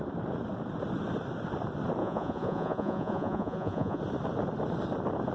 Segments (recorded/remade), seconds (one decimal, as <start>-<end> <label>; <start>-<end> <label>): 0.0-2.0 recorded; 2.0-4.0 remade; 4.0-5.3 recorded